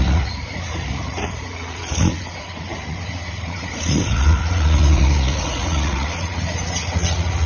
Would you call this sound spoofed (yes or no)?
yes